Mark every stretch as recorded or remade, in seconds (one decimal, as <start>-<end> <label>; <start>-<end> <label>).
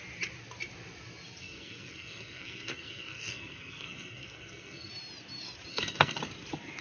0.0-1.4 recorded; 1.4-4.9 remade; 4.9-5.7 recorded; 5.7-6.2 remade; 6.2-6.8 recorded